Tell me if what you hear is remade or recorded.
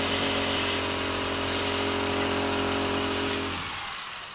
recorded